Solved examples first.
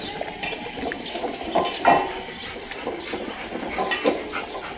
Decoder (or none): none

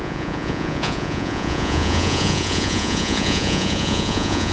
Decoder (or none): vocoder, Vocos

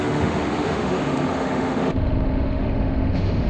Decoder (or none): autoencoder, DAC-VAE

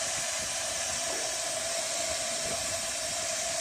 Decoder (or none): none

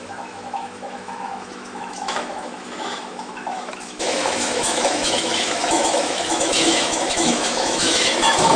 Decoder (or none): autoencoder, DAC-VAE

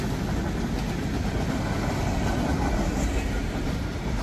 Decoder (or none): none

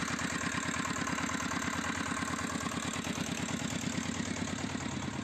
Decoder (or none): none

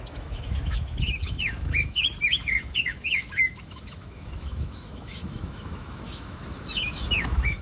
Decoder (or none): autoencoder, DAC-VAE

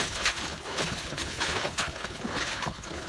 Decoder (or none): codec, HILCodec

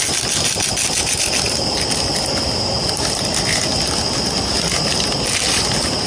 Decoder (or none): none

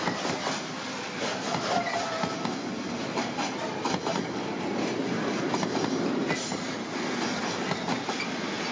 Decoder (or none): none